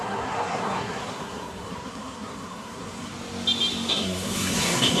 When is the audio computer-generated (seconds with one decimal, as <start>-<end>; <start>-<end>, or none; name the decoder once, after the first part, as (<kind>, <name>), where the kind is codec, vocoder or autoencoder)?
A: 0.0-3.1 (codec, SNAC); 3.9-5.0